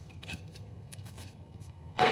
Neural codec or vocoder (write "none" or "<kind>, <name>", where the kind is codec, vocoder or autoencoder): codec, SNAC